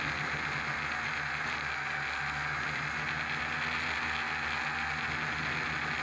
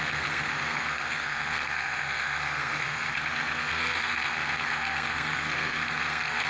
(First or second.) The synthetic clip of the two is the second